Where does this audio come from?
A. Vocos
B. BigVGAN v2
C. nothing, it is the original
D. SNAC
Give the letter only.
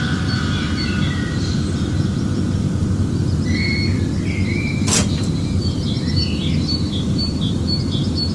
B